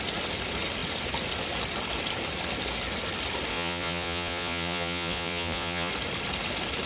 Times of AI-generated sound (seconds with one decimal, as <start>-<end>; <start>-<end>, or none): 3.5-5.9